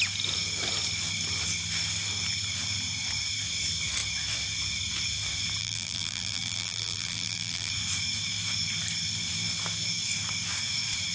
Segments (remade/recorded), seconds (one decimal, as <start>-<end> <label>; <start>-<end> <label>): 0.0-5.6 recorded; 5.6-7.7 remade; 7.7-11.1 recorded